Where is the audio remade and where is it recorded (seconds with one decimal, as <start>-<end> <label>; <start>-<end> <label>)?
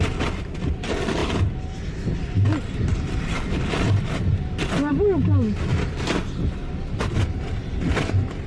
0.0-8.5 recorded